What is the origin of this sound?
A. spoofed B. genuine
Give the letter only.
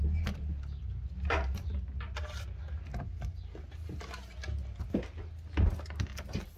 B